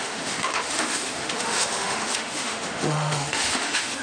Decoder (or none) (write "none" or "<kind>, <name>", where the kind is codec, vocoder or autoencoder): autoencoder, DAC-VAE